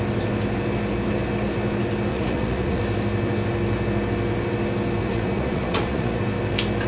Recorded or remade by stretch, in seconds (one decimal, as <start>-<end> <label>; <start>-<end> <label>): 0.0-2.1 recorded; 2.1-2.8 remade; 2.8-5.0 recorded; 5.0-6.2 remade; 6.2-6.9 recorded